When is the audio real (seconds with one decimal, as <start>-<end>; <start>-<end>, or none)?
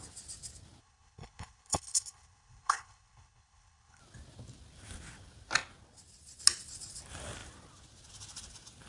0.0-0.8; 4.0-8.9